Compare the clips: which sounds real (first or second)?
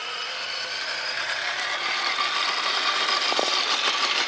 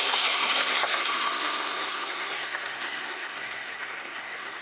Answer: first